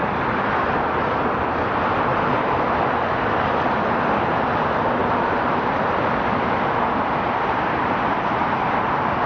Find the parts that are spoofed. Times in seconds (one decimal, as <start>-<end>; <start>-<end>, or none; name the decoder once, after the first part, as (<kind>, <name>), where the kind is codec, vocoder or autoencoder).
2.1-2.6 (vocoder, BigVGAN v2); 5.0-5.9; 7.8-8.9